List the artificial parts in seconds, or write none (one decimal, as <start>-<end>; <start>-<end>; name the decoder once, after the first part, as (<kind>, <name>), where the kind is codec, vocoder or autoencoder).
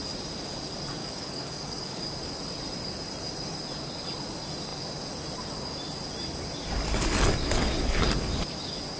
1.0-2.0 (codec, DAC)